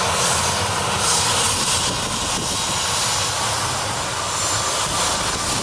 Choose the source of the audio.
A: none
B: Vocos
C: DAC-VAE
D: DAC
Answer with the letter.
A